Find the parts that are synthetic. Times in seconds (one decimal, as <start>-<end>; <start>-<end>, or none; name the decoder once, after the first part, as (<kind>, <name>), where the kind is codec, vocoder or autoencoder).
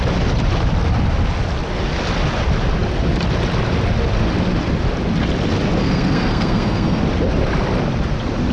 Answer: 5.8-7.0 (codec, SNAC)